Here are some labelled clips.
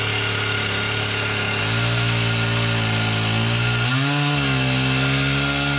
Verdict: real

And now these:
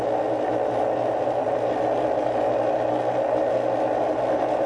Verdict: real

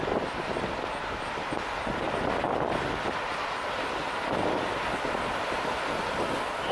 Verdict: real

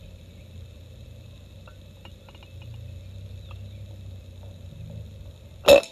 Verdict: real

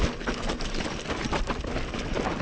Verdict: real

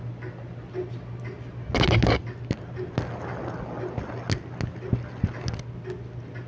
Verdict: real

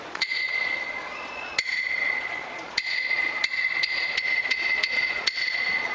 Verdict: fake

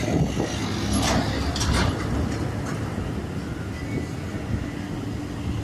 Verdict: real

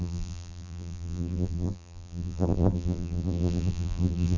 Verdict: fake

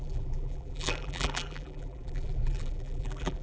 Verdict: fake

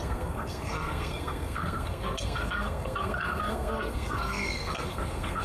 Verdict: fake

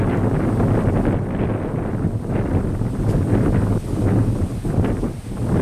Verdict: real